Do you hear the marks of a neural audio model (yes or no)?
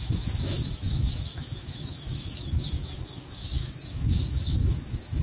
yes